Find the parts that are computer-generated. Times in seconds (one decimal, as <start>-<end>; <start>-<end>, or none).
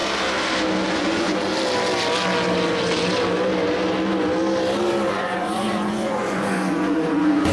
0.9-1.5; 5.1-7.5